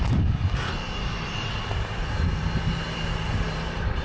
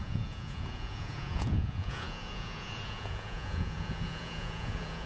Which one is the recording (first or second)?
first